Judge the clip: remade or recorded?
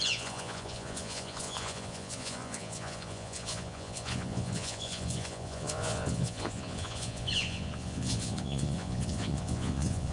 remade